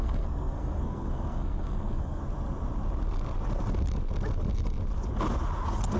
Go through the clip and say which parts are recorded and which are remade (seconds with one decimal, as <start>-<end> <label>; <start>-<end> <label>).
0.0-2.2 remade; 2.2-6.0 recorded